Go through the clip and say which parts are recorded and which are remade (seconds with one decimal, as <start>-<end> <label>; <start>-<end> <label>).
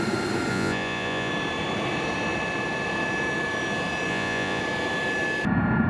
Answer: 0.0-0.5 recorded; 0.5-1.3 remade; 1.3-4.1 recorded; 4.1-4.6 remade; 4.6-5.9 recorded